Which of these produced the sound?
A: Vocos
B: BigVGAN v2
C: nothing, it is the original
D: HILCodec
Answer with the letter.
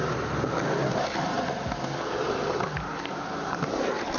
C